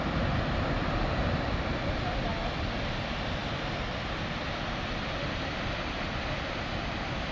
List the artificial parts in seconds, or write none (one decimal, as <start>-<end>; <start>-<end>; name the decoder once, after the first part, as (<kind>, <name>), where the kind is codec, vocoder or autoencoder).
none